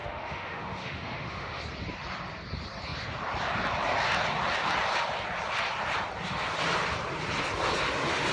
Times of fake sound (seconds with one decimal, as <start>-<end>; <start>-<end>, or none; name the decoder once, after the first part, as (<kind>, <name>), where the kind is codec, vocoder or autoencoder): 0.0-1.6 (autoencoder, DAC-VAE)